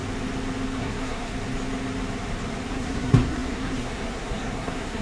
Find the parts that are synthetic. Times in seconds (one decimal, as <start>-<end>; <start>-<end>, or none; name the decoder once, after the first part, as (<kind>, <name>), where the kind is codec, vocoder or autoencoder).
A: 0.8-1.3 (codec, SNAC); 2.7-5.0

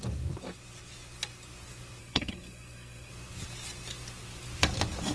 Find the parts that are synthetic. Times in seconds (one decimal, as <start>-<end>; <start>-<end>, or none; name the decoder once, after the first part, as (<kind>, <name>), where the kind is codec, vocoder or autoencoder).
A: 2.0-3.1 (codec, SNAC)

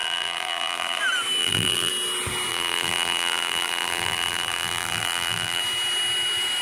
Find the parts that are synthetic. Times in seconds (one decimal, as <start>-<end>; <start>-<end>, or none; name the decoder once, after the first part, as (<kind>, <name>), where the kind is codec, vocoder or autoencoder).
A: 0.0-1.0 (vocoder, BigVGAN v2); 1.4-1.9; 2.5-5.6

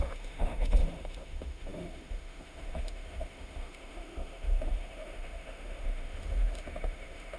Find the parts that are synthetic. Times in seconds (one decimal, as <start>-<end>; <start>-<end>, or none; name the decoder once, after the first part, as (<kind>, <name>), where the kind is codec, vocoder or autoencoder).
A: 0.0-7.4 (autoencoder, DAC-VAE)

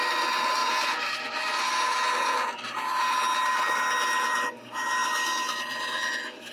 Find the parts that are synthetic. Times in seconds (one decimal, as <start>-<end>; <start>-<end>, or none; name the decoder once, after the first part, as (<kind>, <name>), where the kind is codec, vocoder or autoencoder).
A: none

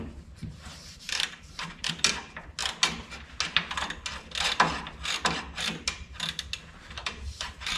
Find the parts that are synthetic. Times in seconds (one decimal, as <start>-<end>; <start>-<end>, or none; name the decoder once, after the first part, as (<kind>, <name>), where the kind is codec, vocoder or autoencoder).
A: 0.4-1.9 (vocoder, BigVGAN v2); 7.0-7.8

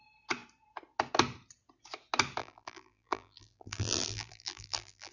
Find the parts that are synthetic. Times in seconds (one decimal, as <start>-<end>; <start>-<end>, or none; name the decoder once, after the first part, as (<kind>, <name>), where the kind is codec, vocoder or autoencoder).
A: 2.4-5.1 (vocoder, BigVGAN v2)

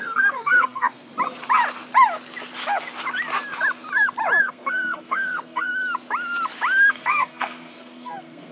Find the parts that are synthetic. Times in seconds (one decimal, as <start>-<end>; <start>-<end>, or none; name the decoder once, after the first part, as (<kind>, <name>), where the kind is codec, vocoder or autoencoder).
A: 0.0-1.1 (codec, SNAC); 4.4-5.7; 6.9-8.5